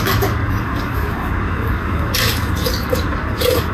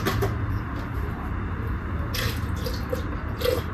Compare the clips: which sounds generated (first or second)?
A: first